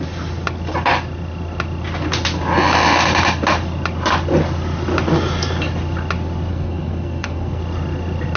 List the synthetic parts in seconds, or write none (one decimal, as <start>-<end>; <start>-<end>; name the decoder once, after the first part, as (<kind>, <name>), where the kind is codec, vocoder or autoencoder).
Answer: 6.5-7.6 (codec, SNAC)